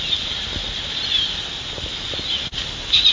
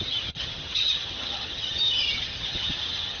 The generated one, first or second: second